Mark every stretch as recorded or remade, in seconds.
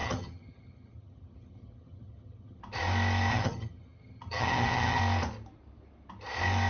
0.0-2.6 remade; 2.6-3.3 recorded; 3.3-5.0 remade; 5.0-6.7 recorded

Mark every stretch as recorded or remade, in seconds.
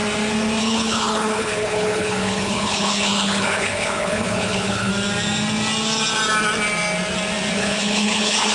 0.0-0.6 recorded; 0.6-4.9 remade; 4.9-7.5 recorded; 7.5-8.5 remade